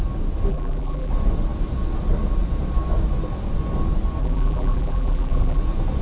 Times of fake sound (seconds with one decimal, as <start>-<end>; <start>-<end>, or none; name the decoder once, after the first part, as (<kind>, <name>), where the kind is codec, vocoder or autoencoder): 0.5-1.1 (vocoder, BigVGAN v2); 4.2-5.6